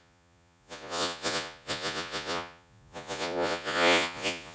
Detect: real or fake fake